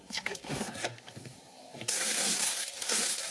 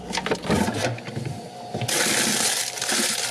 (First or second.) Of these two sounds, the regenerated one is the first